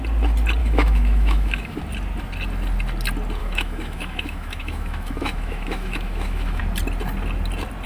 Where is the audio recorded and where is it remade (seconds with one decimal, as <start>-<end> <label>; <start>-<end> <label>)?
0.0-0.6 recorded; 0.6-1.8 remade; 1.8-3.4 recorded; 3.4-6.6 remade; 6.6-7.9 recorded